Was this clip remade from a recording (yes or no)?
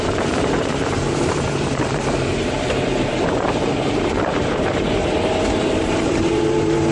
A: yes